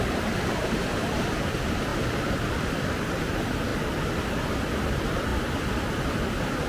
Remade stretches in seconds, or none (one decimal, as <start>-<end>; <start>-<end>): 0.0-1.9; 2.8-3.7; 4.8-5.3; 5.9-6.7